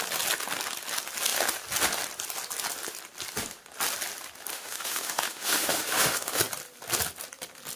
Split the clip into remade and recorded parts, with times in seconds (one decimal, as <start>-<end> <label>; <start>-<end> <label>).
0.0-4.5 recorded; 4.5-6.4 remade; 6.4-7.8 recorded